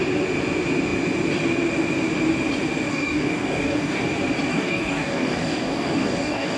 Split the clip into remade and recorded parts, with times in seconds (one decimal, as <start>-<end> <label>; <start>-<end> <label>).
0.0-2.9 recorded; 2.9-4.0 remade; 4.0-4.5 recorded; 4.5-6.6 remade